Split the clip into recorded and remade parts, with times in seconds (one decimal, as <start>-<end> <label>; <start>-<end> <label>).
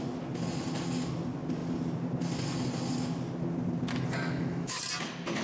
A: 0.0-4.2 recorded; 4.2-4.8 remade; 4.8-5.4 recorded